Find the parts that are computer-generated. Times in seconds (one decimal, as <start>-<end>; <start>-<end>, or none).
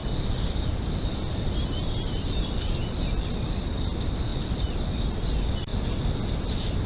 none